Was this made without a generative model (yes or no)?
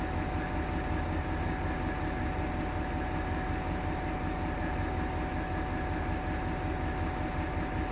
yes